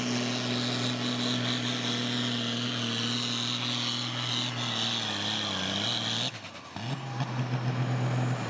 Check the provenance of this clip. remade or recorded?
recorded